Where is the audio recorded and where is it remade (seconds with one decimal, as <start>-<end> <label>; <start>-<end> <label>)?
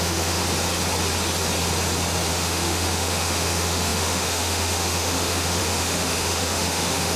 0.0-0.4 remade; 0.4-2.3 recorded; 2.3-7.2 remade